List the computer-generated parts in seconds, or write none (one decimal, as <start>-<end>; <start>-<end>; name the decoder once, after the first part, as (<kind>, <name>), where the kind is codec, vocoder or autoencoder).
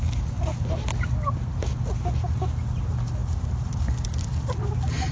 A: none